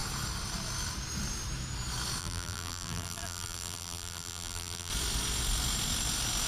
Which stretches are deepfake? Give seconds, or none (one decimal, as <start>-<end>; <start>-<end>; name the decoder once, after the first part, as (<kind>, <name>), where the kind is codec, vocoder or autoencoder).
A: 2.2-4.9 (vocoder, BigVGAN v2)